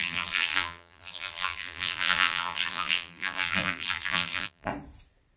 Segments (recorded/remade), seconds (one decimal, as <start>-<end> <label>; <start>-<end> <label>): 0.0-4.7 remade; 4.7-5.4 recorded